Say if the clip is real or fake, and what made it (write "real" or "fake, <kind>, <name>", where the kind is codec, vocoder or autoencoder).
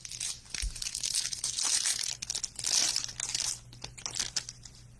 real